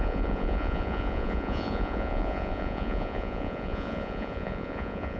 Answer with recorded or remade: remade